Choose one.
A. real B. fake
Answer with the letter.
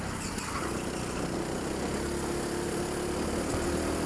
A